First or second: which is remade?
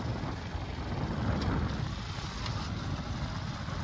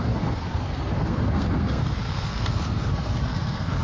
second